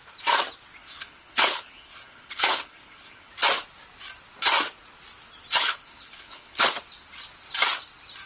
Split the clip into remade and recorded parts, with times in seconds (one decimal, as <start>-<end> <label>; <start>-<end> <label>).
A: 0.0-0.8 recorded; 0.8-3.3 remade; 3.3-5.6 recorded; 5.6-6.7 remade; 6.7-8.3 recorded